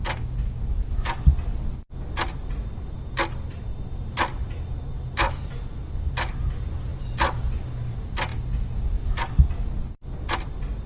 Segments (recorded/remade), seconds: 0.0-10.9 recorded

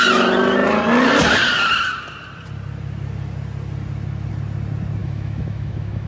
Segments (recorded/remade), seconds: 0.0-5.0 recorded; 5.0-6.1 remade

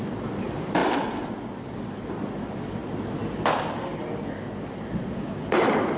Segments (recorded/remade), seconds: 0.0-6.0 recorded

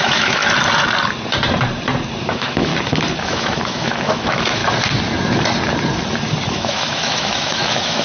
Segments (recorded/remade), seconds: 0.0-0.4 remade; 0.4-2.2 recorded; 2.2-2.7 remade; 2.7-3.2 recorded; 3.2-4.6 remade; 4.6-6.5 recorded; 6.5-8.0 remade

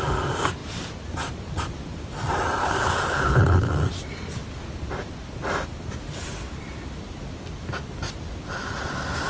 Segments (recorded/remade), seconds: 0.0-2.6 recorded; 2.6-3.7 remade; 3.7-9.3 recorded

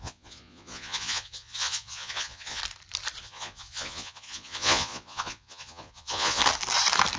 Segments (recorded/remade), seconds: 0.0-2.6 remade; 2.6-3.2 recorded; 3.2-6.4 remade; 6.4-7.2 recorded

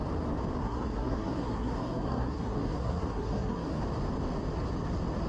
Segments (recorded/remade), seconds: 0.0-0.6 recorded; 0.6-3.8 remade; 3.8-5.3 recorded